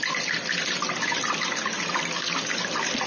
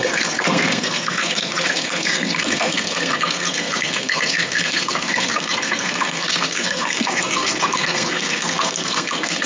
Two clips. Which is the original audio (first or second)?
first